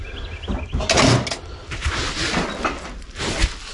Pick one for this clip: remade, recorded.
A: recorded